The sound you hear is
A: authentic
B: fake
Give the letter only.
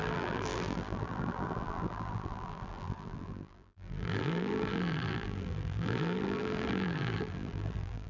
B